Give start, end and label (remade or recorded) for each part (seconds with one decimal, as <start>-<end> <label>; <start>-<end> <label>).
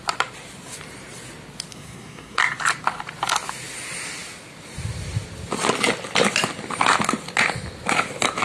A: 0.0-1.7 recorded; 1.7-2.4 remade; 2.4-8.4 recorded